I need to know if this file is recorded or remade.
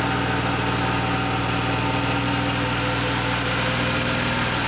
recorded